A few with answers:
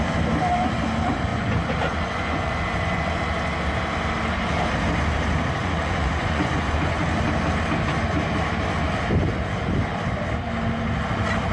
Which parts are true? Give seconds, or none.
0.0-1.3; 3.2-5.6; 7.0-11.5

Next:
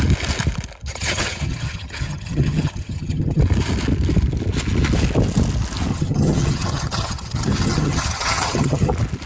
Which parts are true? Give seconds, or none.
0.0-0.8; 3.4-5.9; 8.9-9.3

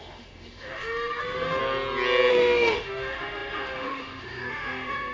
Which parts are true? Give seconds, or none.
1.6-2.3

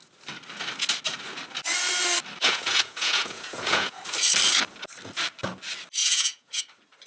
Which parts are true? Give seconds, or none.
0.0-2.4; 4.0-6.0; 6.6-7.1

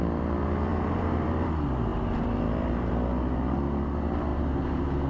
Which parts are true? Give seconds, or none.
0.0-0.7; 1.3-4.3

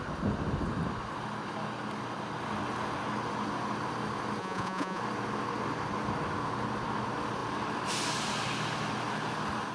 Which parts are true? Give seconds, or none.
0.0-4.4; 5.0-9.7

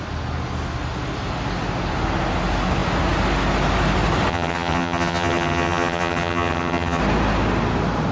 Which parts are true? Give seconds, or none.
0.0-4.3; 7.0-8.1

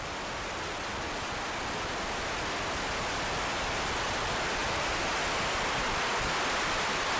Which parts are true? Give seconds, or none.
0.0-4.6; 5.1-7.2